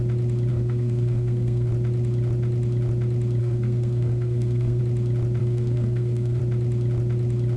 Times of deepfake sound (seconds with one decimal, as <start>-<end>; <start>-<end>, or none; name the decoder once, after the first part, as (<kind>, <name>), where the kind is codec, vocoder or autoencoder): 0.5-1.7 (codec, SNAC); 3.4-4.8; 5.4-6.4